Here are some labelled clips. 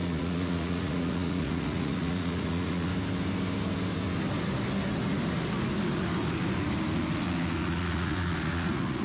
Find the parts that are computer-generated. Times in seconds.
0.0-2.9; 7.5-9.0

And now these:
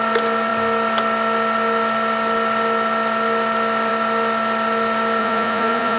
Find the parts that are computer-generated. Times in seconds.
5.2-6.0

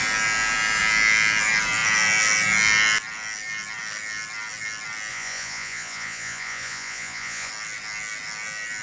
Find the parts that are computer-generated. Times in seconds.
5.1-7.5

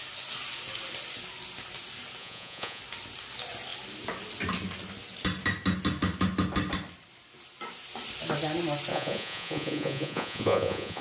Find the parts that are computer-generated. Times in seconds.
2.2-2.8; 8.9-11.0